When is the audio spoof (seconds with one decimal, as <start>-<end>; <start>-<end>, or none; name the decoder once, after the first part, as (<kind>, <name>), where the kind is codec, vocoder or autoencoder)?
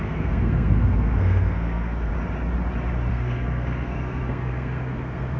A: 0.0-2.1 (codec, SNAC); 3.1-5.4